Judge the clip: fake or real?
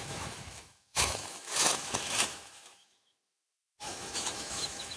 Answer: fake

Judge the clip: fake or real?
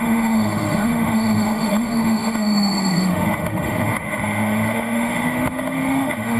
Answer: fake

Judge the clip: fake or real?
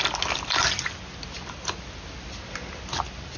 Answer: real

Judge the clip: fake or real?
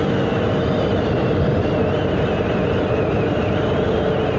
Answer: real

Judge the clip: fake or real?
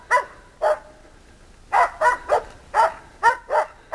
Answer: real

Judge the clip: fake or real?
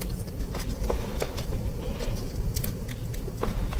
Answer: real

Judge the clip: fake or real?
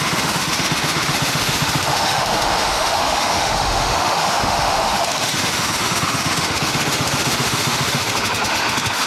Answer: fake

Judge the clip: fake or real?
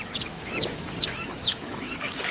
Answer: fake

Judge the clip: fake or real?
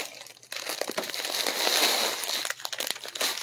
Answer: real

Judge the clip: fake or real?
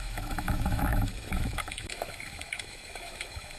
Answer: fake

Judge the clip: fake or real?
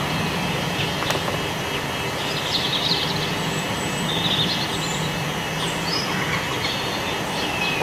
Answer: real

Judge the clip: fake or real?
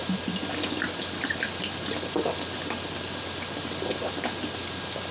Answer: real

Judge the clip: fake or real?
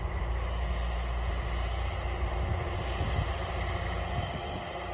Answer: real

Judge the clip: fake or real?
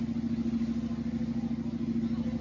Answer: real